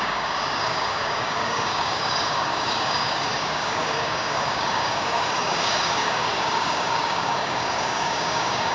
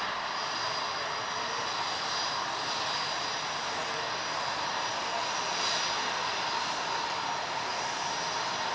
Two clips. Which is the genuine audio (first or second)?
second